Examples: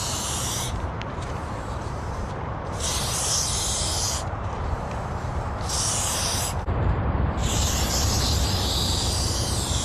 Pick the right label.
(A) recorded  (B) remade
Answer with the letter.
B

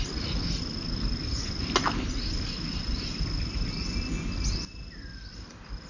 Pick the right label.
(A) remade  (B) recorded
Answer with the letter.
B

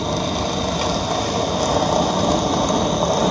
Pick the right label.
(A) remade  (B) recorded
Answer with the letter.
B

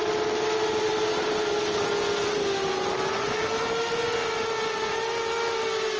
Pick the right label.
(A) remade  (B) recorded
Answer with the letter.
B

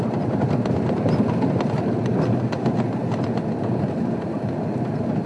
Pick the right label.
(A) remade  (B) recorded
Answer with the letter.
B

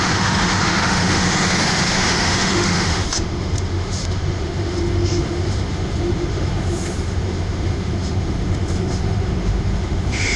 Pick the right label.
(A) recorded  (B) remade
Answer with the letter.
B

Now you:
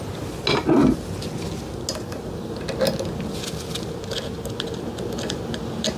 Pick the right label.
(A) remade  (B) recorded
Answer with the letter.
B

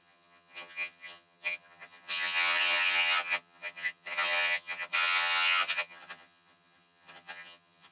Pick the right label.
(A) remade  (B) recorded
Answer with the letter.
A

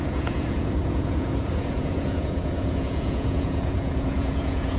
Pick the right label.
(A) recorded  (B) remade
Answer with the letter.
B